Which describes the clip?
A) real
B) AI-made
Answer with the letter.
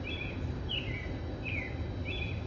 A